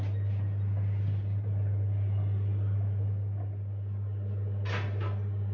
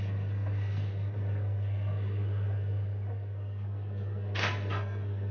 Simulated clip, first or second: second